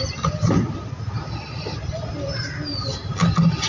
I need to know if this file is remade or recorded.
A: recorded